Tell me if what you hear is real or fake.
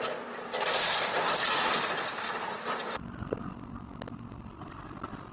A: real